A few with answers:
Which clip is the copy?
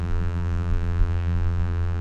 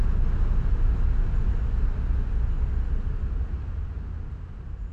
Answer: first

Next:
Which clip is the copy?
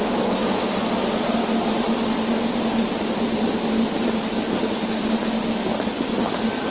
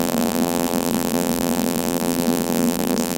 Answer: second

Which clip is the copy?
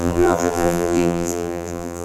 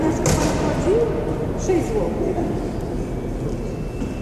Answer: first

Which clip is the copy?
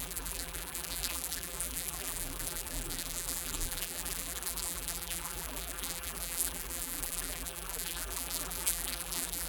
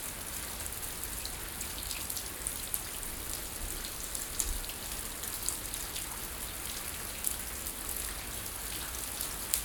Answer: first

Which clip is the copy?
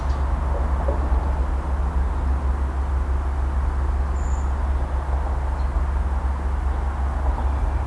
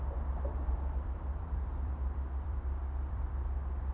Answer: second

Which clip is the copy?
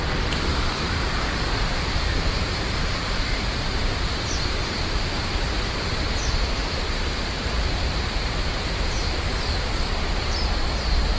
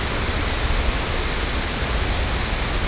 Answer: first